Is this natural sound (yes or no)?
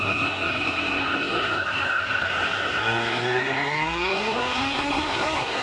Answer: no